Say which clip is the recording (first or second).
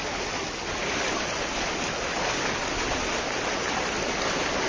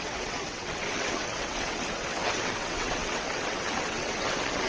first